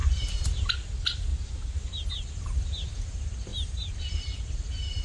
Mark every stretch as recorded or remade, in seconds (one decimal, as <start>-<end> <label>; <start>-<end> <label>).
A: 0.0-0.7 remade; 0.7-1.3 recorded; 1.3-2.1 remade; 2.1-3.5 recorded; 3.5-4.4 remade; 4.4-5.0 recorded